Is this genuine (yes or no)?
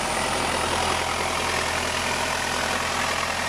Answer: yes